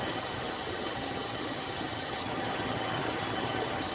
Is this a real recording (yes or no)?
no